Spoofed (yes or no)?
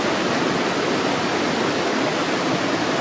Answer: no